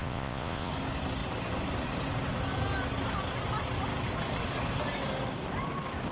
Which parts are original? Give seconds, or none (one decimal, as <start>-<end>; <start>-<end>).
0.7-6.1